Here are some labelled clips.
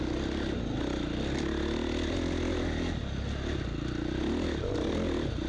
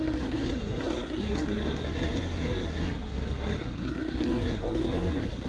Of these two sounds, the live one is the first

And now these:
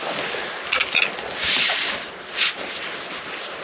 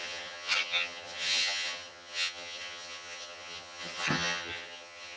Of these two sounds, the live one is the first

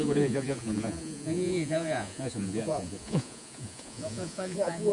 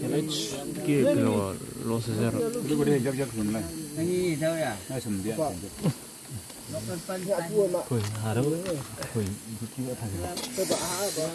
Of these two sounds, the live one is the second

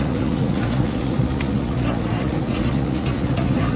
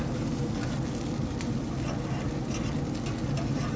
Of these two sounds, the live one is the second